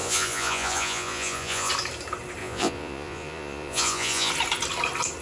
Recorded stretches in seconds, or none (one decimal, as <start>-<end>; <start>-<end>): 1.7-2.4; 4.3-5.2